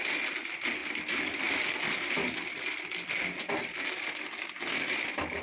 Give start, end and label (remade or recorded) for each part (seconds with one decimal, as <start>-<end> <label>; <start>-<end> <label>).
0.0-5.4 recorded